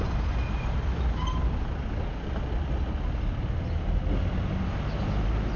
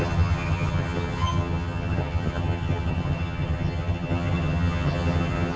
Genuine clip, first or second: first